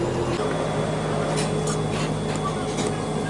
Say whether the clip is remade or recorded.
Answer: recorded